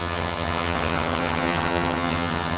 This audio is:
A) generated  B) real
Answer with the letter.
A